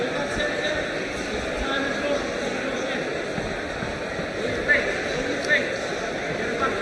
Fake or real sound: real